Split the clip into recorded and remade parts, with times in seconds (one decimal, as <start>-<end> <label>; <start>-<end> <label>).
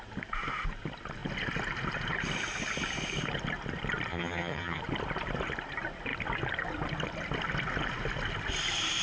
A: 0.0-4.1 recorded; 4.1-4.8 remade; 4.8-9.0 recorded